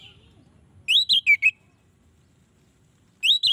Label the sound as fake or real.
real